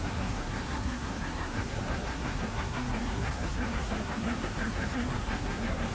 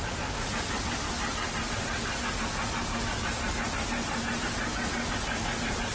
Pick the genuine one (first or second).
second